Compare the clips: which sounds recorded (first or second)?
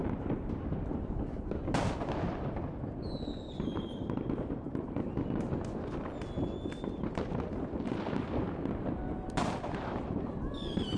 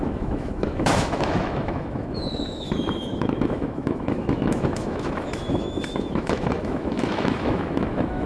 first